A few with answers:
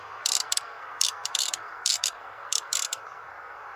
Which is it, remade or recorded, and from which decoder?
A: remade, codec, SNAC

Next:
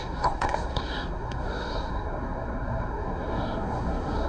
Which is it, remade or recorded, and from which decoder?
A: remade, codec, SNAC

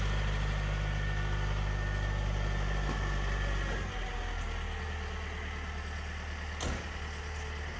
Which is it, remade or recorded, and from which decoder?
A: recorded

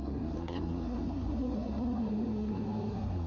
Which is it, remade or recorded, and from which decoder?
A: remade, codec, SNAC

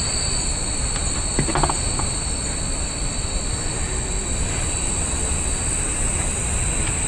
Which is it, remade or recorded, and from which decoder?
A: recorded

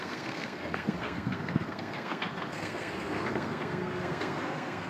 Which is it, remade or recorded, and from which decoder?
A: remade, codec, SNAC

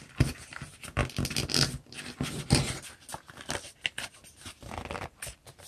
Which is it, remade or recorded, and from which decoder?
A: recorded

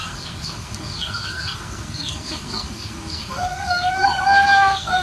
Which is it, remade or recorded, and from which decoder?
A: remade, codec, SNAC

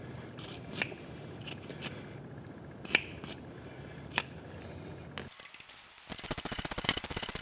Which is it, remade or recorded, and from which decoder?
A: recorded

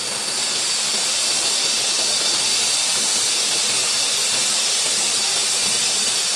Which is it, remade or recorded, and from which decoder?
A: recorded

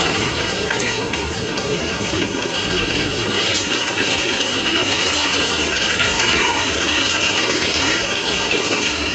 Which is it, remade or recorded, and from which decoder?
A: remade, codec, SNAC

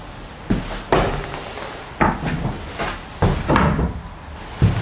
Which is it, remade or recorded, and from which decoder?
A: recorded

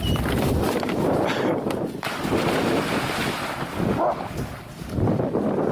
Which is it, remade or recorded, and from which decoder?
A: recorded